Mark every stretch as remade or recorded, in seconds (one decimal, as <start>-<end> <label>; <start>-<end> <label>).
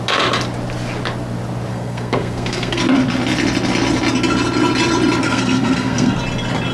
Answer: 0.0-1.7 recorded; 1.7-2.8 remade; 2.8-5.2 recorded; 5.2-6.2 remade; 6.2-6.7 recorded